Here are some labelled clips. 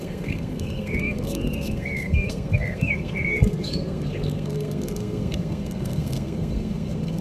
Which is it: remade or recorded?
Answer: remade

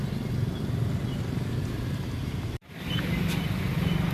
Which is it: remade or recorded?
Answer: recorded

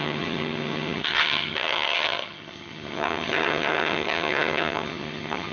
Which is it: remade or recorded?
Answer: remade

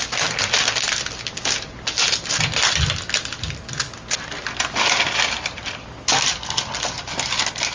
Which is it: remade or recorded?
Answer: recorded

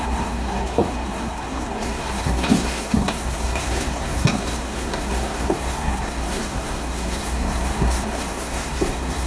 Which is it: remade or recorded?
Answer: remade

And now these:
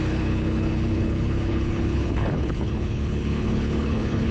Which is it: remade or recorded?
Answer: remade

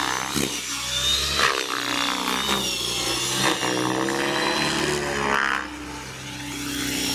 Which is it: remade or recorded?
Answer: recorded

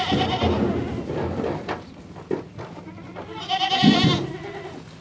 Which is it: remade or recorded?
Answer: recorded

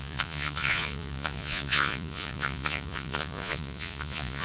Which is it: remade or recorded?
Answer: remade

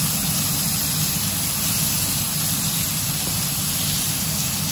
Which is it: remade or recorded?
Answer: recorded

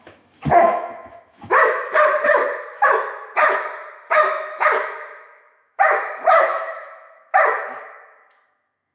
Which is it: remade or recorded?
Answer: remade